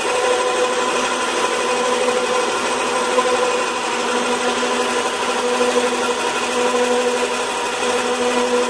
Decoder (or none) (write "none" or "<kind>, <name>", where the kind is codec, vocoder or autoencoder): none